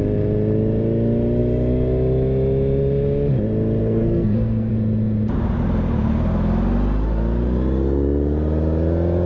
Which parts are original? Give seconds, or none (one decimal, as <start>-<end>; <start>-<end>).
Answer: 0.0-3.8; 4.7-9.3